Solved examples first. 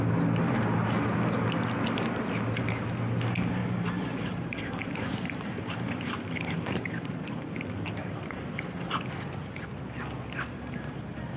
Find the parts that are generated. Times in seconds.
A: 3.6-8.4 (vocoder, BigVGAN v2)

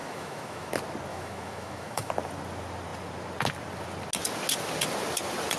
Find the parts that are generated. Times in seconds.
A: 0.0-0.7 (autoencoder, DAC-VAE); 1.1-2.1